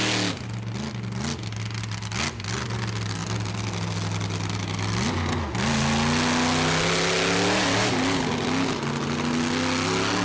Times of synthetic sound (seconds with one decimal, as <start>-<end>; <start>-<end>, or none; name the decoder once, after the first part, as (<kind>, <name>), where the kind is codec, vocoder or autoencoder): none